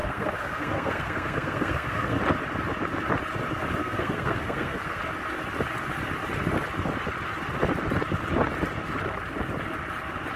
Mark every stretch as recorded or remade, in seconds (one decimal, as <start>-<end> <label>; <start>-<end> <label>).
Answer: 0.0-2.2 remade; 2.2-3.8 recorded; 3.8-5.0 remade; 5.0-10.4 recorded